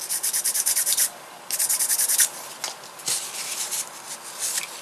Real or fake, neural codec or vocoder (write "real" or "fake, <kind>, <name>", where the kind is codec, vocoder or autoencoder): real